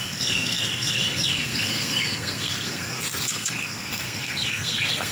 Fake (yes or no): yes